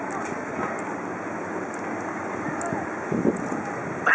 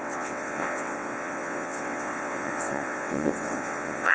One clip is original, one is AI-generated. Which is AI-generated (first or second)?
second